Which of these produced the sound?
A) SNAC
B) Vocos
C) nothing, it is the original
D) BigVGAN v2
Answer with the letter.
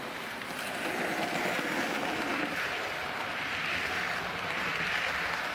C